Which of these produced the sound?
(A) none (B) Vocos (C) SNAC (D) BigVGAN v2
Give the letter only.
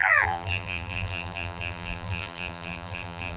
D